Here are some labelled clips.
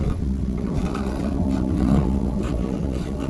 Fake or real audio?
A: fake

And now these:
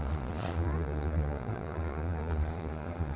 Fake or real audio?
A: fake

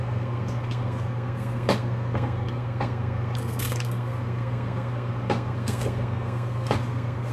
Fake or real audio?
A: fake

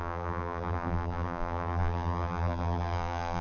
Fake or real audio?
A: fake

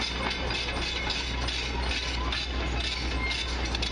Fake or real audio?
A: real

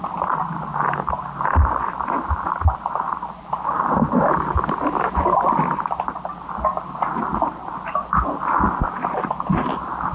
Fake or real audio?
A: real